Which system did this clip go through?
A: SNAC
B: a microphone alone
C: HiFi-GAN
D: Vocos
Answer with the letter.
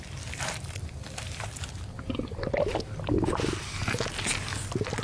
B